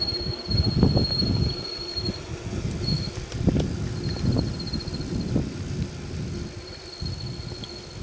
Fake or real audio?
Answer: real